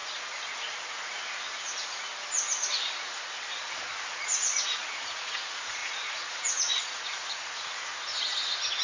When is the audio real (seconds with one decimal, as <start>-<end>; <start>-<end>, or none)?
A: 2.1-4.1; 7.9-8.8